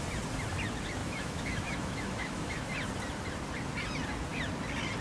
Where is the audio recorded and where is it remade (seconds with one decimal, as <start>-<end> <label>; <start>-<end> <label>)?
0.0-1.0 recorded; 1.0-2.7 remade; 2.7-5.0 recorded